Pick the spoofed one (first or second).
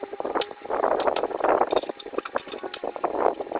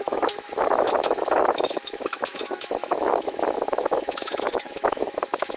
second